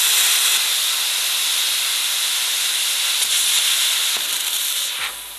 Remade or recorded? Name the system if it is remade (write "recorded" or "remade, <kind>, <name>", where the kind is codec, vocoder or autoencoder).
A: recorded